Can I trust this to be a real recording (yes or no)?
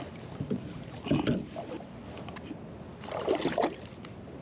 yes